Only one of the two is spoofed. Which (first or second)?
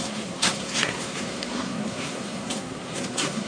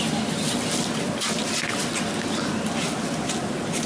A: first